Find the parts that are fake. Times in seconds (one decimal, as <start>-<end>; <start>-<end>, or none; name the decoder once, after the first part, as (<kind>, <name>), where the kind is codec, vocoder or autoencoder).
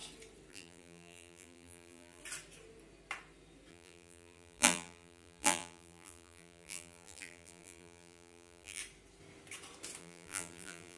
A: 0.5-2.2 (vocoder, BigVGAN v2); 3.7-8.8; 10.0-11.0